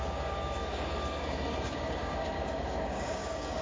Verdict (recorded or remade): remade